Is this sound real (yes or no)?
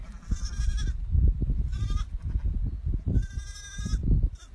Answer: yes